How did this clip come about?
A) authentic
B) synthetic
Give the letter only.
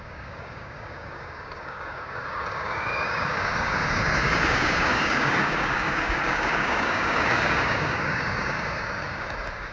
B